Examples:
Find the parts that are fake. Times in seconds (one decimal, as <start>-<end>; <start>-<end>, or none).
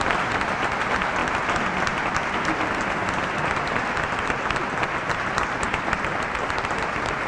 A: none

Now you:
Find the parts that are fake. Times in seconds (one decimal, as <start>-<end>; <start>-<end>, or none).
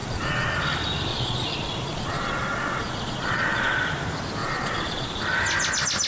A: 0.0-0.5; 1.1-3.8; 4.4-5.2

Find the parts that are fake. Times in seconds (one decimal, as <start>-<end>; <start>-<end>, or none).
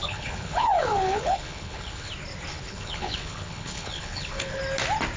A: 0.0-2.1; 2.5-4.6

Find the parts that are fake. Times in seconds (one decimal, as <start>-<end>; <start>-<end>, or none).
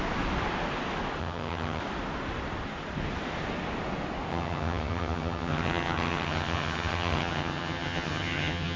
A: 1.2-1.8; 4.3-8.8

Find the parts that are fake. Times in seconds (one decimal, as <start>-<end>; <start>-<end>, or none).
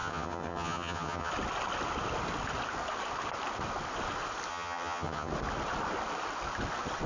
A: 0.0-1.3; 4.5-5.3